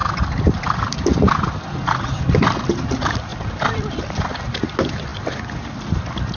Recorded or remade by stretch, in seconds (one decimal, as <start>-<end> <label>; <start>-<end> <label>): 0.0-2.2 remade; 2.2-3.3 recorded; 3.3-4.2 remade; 4.2-6.4 recorded